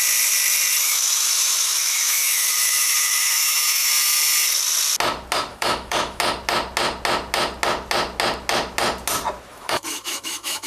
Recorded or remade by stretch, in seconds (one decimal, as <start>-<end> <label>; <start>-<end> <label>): 0.0-0.8 recorded; 0.8-3.9 remade; 3.9-5.5 recorded; 5.5-6.2 remade; 6.2-9.5 recorded; 9.5-10.7 remade